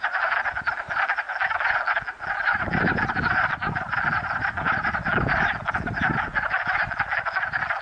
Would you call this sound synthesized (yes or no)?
no